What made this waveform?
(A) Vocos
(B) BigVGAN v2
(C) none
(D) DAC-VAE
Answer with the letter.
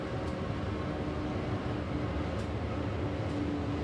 C